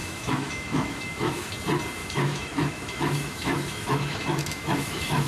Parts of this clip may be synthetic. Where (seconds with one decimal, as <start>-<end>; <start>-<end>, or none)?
0.0-1.5; 2.0-5.3